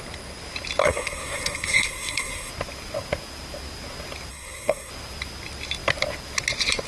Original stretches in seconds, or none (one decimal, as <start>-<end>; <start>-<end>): 0.0-0.8; 2.5-4.3; 4.9-6.9